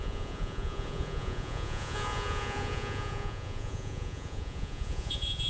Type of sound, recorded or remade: remade